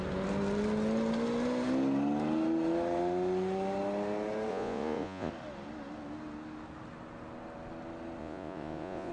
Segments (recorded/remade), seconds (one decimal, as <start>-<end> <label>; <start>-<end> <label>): 0.0-4.5 recorded; 4.5-5.3 remade; 5.3-8.2 recorded; 8.2-9.1 remade